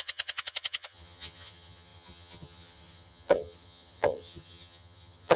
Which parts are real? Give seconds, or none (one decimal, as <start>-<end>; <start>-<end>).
none

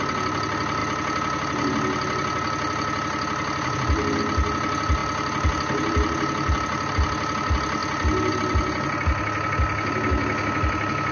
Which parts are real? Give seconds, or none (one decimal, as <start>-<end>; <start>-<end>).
0.0-11.1

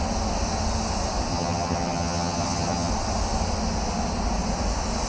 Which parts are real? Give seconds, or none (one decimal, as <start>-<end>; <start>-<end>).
0.0-1.3; 2.9-5.1

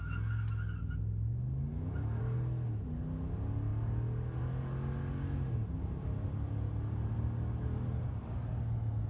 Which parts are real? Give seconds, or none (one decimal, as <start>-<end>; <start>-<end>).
0.0-9.1

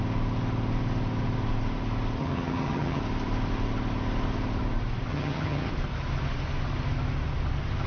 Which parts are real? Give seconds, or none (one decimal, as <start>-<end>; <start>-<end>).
0.0-2.2; 3.0-5.1; 5.7-7.9

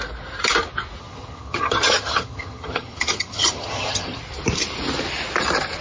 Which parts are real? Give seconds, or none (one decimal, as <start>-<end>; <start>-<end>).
0.0-1.0; 4.2-5.8

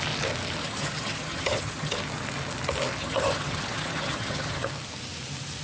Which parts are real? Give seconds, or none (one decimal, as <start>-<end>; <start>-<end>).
0.0-0.6; 2.0-3.0; 4.7-5.6